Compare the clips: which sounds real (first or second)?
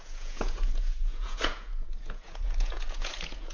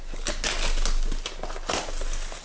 second